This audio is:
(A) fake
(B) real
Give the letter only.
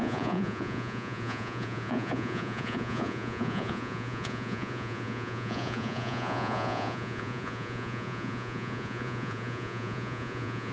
A